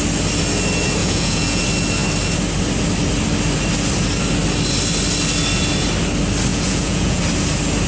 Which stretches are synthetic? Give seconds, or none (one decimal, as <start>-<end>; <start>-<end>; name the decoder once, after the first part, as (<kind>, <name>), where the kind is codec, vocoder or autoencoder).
1.0-1.6 (vocoder, Vocos); 6.5-7.2